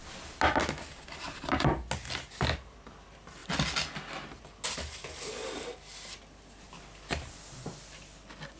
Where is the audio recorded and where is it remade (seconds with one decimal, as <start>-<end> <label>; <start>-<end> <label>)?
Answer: 0.0-8.6 recorded